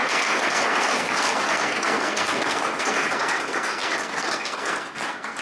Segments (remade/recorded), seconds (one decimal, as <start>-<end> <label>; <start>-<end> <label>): 0.0-5.4 remade